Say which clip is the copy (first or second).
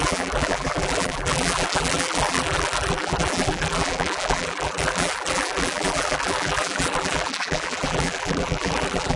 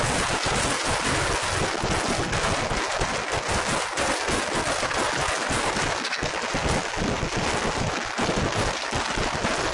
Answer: first